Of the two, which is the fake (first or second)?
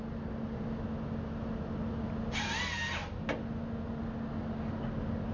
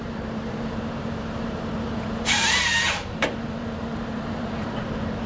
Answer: second